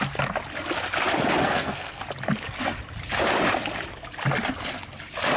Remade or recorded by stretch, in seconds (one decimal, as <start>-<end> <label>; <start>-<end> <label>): 0.0-1.4 recorded; 1.4-2.0 remade; 2.0-5.4 recorded